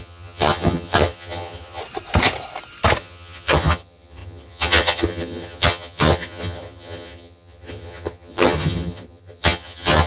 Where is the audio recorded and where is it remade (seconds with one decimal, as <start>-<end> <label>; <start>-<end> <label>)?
0.0-1.8 remade; 1.8-3.0 recorded; 3.0-10.1 remade